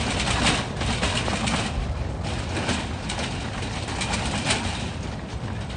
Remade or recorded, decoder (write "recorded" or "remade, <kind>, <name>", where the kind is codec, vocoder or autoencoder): recorded